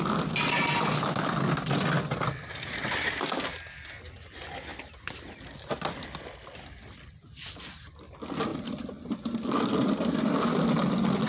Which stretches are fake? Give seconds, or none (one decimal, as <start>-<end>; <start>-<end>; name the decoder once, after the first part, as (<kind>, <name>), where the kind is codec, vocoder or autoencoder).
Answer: none